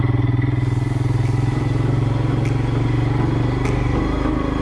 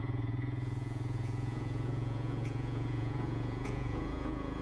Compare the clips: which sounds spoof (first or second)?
second